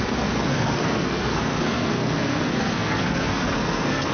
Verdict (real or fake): fake